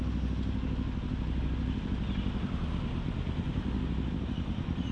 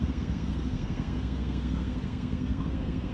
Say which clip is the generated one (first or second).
second